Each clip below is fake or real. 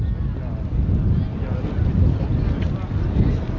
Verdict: real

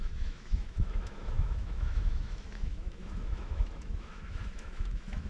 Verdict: fake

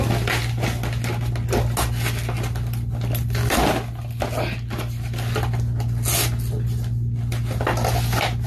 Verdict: real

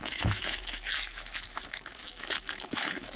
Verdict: fake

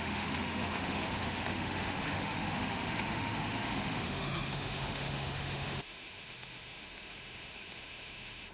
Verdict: fake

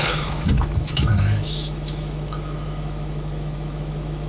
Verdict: fake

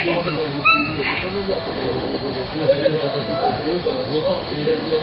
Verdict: fake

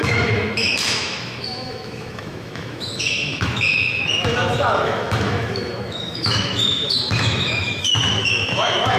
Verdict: fake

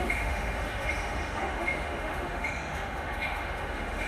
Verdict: fake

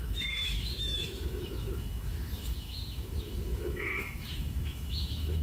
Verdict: fake